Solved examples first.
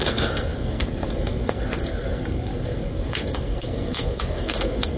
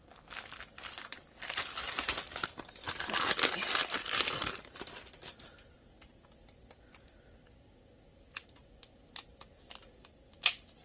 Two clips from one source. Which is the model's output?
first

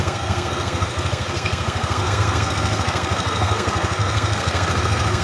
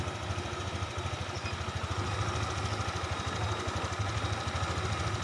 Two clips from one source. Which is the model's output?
first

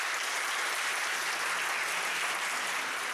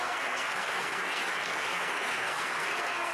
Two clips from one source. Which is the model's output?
second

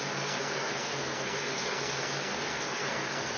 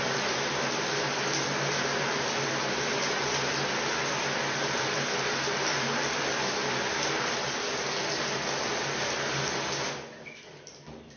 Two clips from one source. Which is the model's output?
first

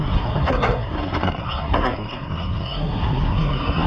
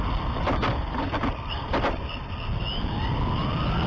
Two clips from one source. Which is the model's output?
first